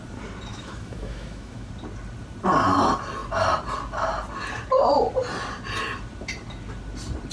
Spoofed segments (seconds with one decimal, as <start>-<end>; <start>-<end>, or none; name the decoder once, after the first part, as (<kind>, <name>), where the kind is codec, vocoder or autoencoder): 0.5-1.7 (autoencoder, DAC-VAE)